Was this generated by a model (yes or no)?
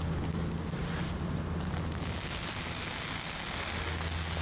no